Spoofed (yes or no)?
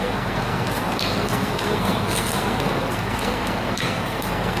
yes